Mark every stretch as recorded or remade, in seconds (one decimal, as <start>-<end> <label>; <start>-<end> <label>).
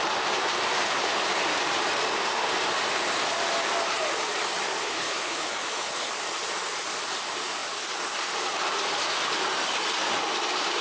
0.0-4.8 recorded; 4.8-6.1 remade; 6.1-10.8 recorded